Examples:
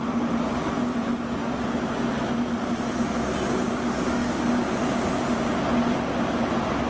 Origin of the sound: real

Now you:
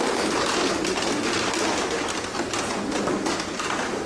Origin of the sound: real